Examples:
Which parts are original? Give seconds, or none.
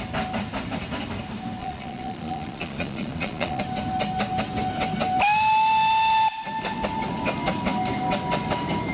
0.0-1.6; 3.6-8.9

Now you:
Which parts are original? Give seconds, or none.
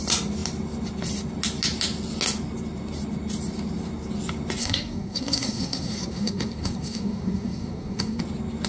0.0-4.6; 8.2-8.7